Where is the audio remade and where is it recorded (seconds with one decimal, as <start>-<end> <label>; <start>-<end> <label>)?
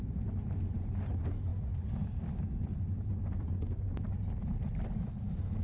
0.0-5.6 recorded